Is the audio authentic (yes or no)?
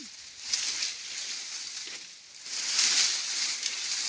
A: yes